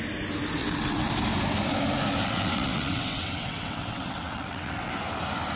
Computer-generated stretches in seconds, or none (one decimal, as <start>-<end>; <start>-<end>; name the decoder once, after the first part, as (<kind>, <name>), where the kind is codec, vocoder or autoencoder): 0.6-1.1 (vocoder, WaveNeXt); 2.2-4.9